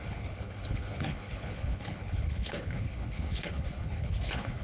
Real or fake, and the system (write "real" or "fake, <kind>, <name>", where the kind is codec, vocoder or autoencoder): fake, codec, HILCodec